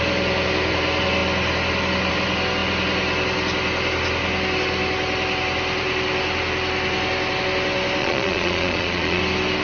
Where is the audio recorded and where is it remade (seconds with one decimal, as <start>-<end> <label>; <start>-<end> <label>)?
0.0-8.0 recorded; 8.0-9.2 remade; 9.2-9.6 recorded